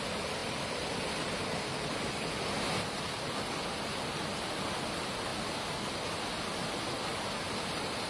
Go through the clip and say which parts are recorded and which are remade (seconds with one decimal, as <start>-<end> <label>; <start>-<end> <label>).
0.0-8.1 recorded